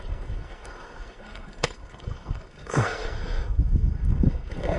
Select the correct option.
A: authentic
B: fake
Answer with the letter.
B